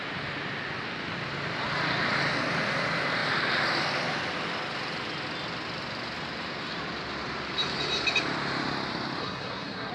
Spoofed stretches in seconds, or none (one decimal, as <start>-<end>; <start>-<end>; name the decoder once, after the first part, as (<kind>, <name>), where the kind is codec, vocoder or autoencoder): 9.2-9.9 (codec, SNAC)